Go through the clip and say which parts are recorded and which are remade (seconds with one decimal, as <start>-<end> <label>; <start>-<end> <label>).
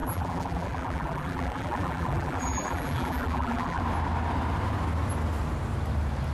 0.0-3.8 remade; 3.8-6.3 recorded